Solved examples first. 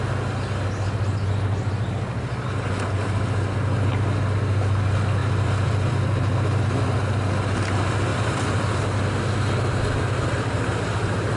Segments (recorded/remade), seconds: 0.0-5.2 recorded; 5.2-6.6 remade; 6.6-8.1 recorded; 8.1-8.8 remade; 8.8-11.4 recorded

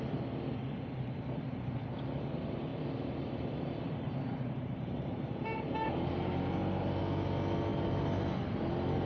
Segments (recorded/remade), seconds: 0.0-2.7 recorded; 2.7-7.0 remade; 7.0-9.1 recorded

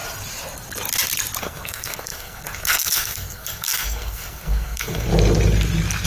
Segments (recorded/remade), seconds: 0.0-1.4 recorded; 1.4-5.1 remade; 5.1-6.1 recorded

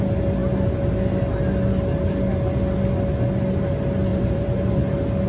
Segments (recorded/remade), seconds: 0.0-4.1 recorded; 4.1-4.8 remade; 4.8-5.3 recorded